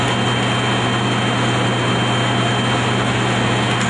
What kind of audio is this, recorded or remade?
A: recorded